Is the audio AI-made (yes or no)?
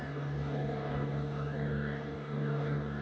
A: yes